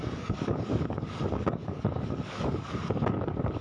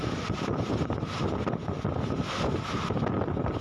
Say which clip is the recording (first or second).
second